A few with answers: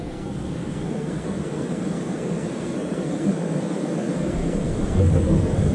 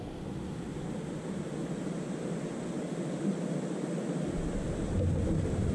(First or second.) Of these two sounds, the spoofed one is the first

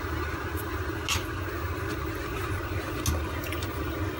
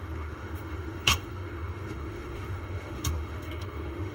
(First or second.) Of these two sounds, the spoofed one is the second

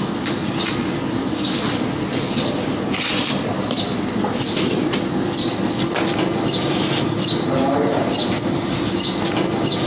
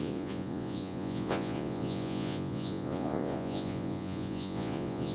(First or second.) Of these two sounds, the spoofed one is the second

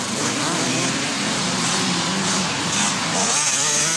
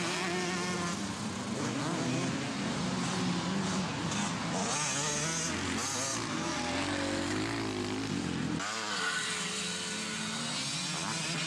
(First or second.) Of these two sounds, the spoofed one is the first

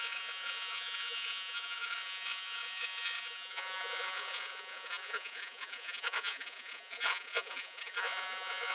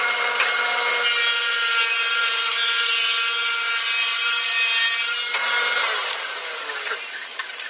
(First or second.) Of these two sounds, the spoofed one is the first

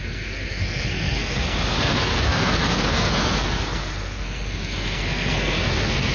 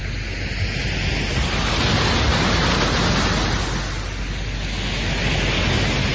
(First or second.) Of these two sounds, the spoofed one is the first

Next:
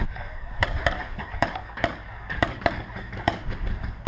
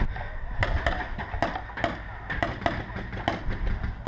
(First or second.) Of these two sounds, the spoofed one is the first